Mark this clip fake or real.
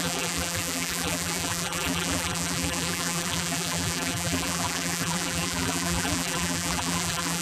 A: fake